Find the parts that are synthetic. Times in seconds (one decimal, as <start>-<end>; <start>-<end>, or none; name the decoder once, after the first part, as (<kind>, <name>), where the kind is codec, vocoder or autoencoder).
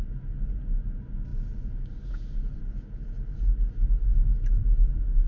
none